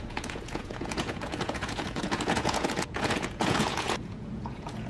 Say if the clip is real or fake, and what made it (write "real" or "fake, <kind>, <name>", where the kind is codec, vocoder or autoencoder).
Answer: fake, vocoder, Vocos